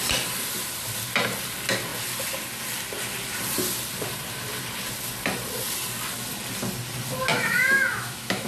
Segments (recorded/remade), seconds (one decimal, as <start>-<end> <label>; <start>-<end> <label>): 0.0-7.3 recorded; 7.3-8.5 remade